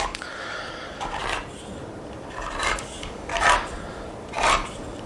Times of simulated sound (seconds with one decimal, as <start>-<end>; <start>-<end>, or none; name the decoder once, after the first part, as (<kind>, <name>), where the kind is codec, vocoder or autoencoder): 0.0-1.2 (codec, DAC); 2.8-3.3